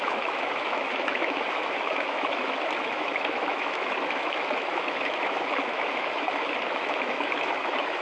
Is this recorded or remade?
remade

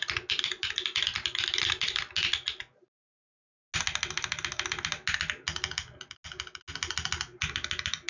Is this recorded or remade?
recorded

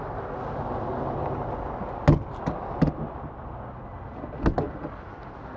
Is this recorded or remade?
recorded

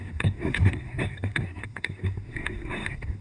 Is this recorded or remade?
remade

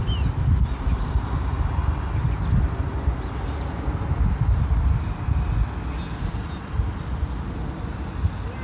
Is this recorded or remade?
recorded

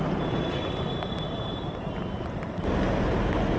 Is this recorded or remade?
remade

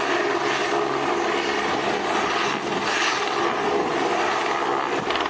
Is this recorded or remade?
recorded